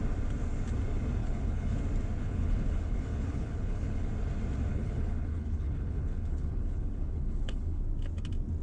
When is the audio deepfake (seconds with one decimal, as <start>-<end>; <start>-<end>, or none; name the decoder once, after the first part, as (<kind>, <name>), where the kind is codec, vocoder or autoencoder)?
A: 1.2-1.8 (codec, HILCodec); 2.2-4.1; 4.7-7.8